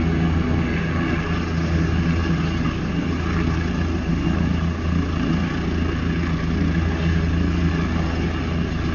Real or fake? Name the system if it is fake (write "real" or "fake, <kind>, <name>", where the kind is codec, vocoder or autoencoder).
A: real